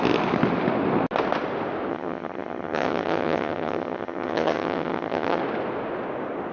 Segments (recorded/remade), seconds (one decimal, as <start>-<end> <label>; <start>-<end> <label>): 0.0-1.9 recorded; 1.9-5.4 remade; 5.4-6.5 recorded